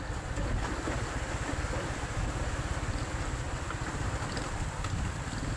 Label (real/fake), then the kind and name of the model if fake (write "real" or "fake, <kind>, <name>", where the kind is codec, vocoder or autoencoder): real